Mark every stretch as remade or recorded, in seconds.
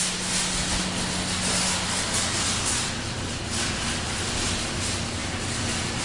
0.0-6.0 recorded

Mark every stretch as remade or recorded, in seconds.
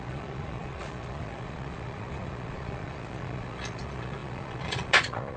0.0-5.4 remade